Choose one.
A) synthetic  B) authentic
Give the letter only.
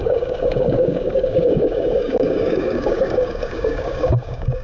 A